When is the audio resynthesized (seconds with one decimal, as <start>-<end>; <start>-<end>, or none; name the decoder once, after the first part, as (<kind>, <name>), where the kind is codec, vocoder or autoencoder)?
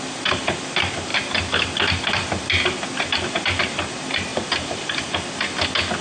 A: 4.3-4.9 (vocoder, BigVGAN v2)